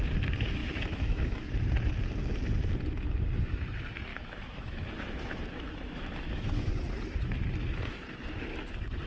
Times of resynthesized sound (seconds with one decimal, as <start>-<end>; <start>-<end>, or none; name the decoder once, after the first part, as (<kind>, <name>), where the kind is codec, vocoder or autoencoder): 0.6-1.4 (autoencoder, DAC-VAE); 4.1-6.7